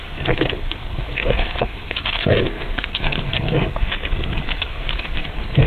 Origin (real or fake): fake